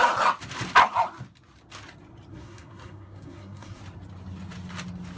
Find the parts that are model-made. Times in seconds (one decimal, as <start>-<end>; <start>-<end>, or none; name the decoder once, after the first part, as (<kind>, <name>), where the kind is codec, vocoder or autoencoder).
2.3-3.8 (codec, SNAC)